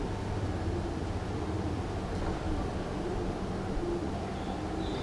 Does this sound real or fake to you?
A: real